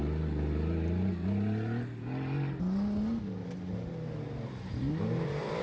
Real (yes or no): yes